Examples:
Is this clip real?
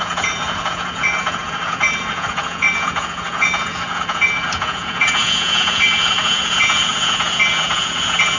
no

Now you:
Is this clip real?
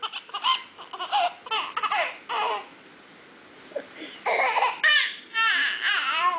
yes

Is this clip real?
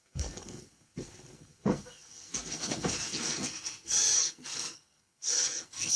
no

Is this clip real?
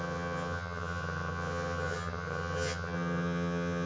no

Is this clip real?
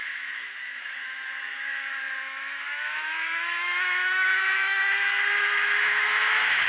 no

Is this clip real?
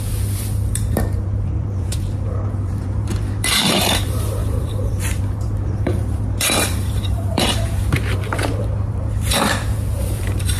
no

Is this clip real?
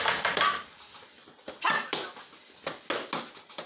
yes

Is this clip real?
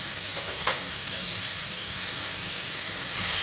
no